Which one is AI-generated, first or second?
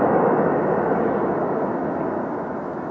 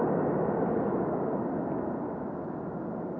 first